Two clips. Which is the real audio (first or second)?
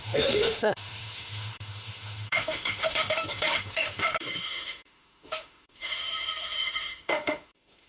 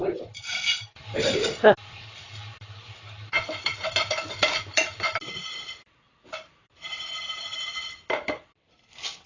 second